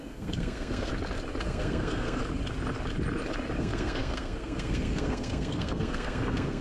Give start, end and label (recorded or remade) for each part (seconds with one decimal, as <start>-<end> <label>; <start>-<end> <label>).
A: 0.0-0.9 remade; 0.9-1.4 recorded; 1.4-2.2 remade; 2.2-3.6 recorded; 3.6-6.6 remade